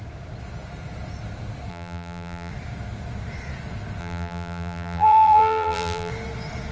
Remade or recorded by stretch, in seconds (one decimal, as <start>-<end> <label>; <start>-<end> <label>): 0.0-1.7 recorded; 1.7-2.5 remade; 2.5-4.0 recorded; 4.0-6.1 remade; 6.1-6.7 recorded